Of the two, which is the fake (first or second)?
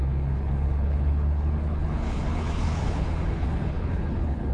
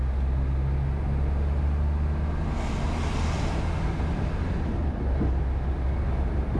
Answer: first